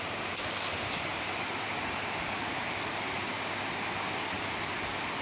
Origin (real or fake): real